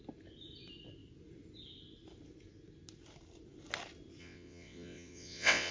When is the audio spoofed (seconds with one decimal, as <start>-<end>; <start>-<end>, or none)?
4.2-5.7